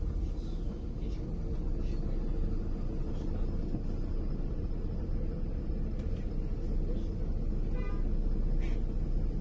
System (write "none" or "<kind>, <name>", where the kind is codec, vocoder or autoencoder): none